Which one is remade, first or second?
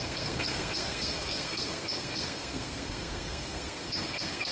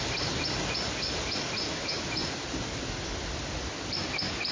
first